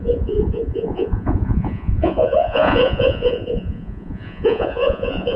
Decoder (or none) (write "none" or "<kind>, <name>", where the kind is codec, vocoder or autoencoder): vocoder, Vocos